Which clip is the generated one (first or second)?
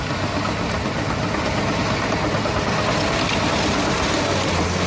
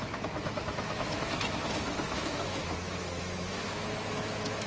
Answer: second